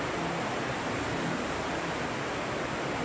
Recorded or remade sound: recorded